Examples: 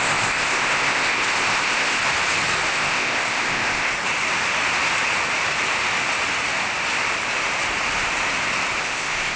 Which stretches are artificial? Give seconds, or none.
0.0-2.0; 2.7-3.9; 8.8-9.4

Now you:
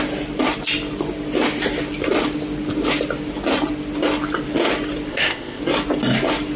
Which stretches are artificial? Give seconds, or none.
5.1-5.6

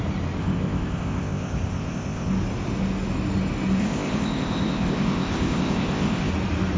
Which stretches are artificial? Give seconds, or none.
0.4-2.3; 3.8-6.3

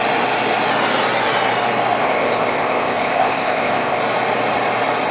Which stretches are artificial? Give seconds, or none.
2.0-4.0